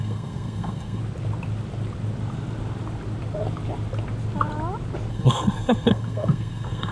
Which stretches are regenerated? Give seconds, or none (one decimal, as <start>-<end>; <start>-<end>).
0.0-1.0; 5.1-6.9